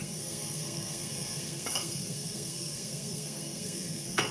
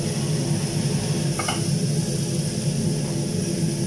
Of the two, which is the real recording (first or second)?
second